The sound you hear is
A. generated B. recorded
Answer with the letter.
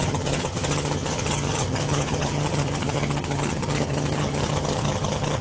A